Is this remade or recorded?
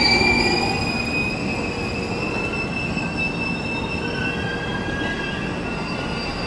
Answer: recorded